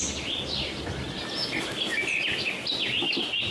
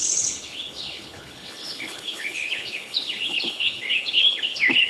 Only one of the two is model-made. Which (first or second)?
second